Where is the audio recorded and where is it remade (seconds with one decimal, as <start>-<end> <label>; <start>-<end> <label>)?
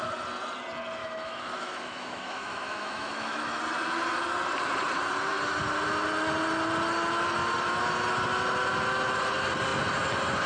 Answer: 0.0-1.0 recorded; 1.0-3.6 remade; 3.6-10.5 recorded